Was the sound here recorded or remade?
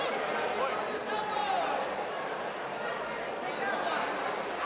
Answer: recorded